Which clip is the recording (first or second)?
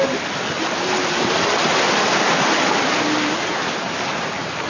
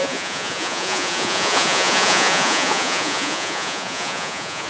first